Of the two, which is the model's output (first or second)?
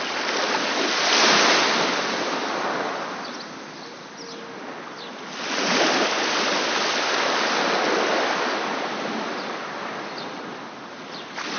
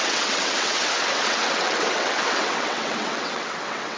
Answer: second